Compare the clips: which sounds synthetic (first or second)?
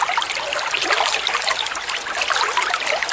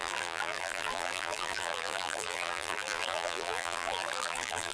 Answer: second